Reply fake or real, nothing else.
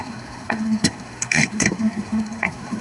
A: fake